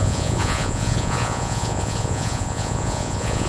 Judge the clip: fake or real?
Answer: fake